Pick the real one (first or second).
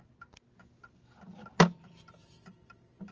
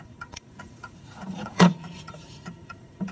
first